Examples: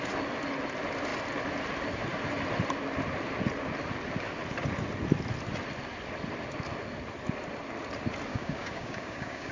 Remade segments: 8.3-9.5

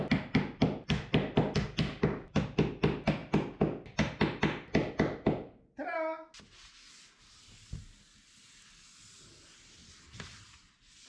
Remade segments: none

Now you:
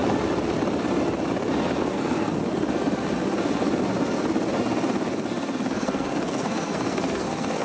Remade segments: 1.8-2.3; 5.7-7.6

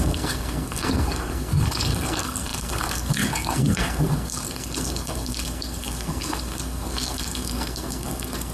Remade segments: 0.0-8.5